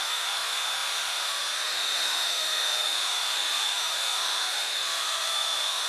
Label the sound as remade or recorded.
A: remade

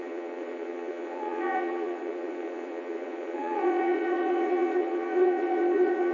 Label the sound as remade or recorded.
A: remade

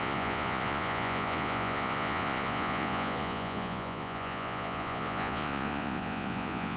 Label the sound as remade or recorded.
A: remade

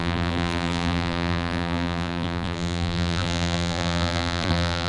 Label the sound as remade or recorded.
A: remade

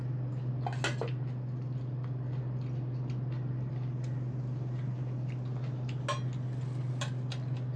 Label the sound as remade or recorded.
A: recorded